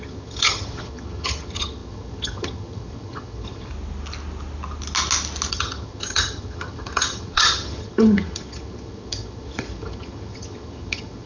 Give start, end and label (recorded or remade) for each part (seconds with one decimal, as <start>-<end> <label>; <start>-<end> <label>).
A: 0.0-3.7 remade; 3.7-5.5 recorded; 5.5-11.3 remade